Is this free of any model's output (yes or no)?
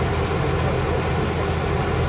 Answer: yes